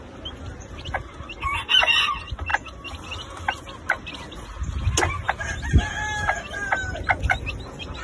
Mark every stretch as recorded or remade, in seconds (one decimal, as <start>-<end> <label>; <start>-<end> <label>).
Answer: 0.0-8.0 recorded